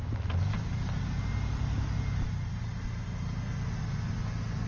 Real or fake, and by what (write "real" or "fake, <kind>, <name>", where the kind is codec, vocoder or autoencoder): real